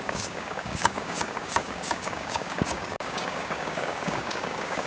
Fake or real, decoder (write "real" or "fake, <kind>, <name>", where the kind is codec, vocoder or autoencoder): fake, codec, DAC